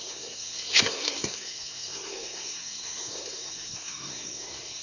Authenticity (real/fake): fake